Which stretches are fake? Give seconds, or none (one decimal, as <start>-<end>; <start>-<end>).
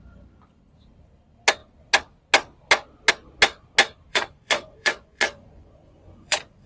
4.1-6.7